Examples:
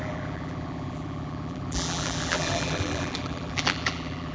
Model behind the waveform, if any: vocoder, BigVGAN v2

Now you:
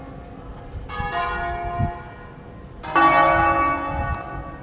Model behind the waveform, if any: none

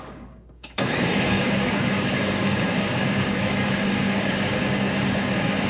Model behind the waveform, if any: codec, DAC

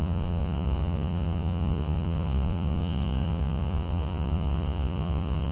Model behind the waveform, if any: vocoder, Vocos